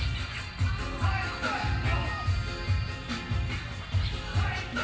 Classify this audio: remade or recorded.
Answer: recorded